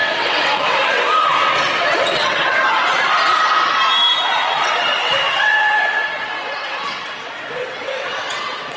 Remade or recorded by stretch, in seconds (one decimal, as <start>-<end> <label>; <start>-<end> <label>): 0.0-3.1 remade; 3.1-4.4 recorded; 4.4-8.8 remade